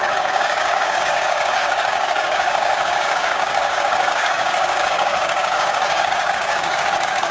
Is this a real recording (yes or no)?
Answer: no